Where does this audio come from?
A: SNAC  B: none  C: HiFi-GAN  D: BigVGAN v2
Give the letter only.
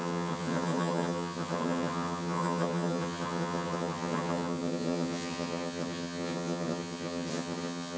C